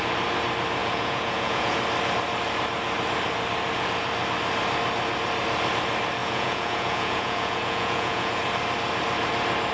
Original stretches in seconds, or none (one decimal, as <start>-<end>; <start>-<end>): 0.0-0.8; 1.8-6.2; 8.4-9.7